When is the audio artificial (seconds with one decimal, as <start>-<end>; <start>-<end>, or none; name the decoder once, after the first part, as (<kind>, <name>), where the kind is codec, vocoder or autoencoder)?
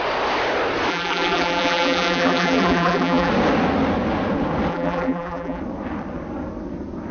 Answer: 0.9-3.3 (vocoder, BigVGAN v2); 4.7-5.6